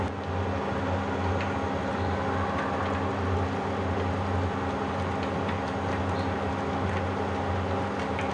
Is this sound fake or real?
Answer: real